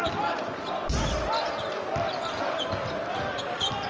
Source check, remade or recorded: recorded